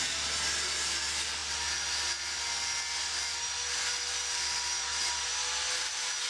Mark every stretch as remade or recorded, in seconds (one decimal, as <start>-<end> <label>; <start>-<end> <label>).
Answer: 0.0-6.3 recorded